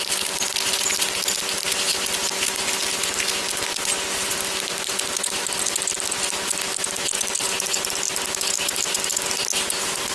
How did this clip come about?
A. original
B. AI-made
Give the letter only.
A